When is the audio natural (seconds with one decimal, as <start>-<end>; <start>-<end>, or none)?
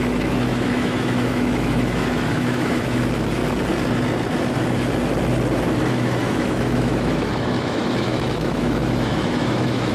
3.4-5.9